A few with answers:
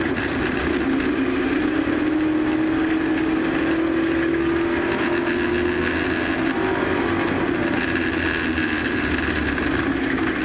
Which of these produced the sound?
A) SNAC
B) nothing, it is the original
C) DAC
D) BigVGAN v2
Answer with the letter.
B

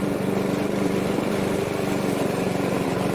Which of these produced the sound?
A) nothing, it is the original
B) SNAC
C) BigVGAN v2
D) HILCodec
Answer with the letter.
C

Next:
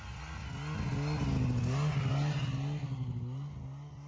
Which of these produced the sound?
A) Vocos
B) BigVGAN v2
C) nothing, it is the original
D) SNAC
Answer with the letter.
C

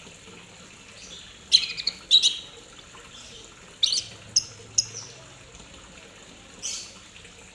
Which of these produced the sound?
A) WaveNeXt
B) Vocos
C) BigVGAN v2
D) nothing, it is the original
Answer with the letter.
D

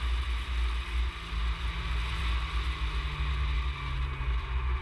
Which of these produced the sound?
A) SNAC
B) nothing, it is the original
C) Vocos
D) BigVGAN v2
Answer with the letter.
B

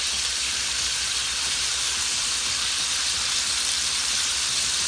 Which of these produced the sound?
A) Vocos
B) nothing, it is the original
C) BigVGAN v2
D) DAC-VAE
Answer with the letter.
C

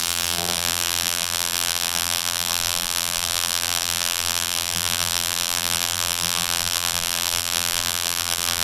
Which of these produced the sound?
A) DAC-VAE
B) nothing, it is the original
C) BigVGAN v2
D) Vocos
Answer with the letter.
C